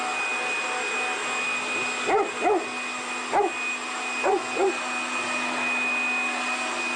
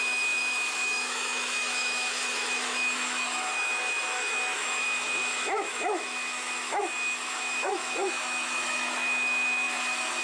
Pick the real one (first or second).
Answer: first